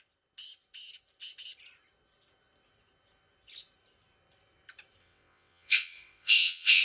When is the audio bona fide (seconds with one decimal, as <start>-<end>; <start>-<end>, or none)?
0.0-5.0

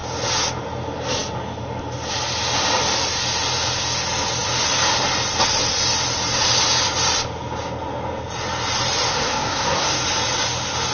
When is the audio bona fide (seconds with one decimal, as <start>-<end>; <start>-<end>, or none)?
0.0-9.1; 10.0-10.9